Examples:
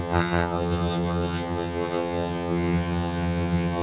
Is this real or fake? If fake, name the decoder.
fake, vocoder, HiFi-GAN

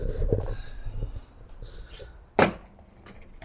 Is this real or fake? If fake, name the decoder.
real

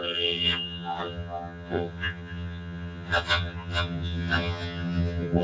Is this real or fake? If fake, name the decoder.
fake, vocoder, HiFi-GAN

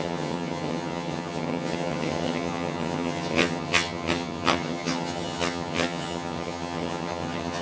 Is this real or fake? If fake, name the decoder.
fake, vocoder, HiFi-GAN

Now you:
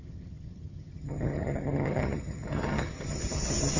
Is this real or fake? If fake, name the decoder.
fake, vocoder, HiFi-GAN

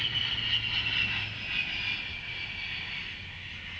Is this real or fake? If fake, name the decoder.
real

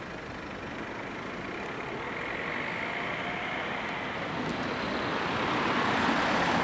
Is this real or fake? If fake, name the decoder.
real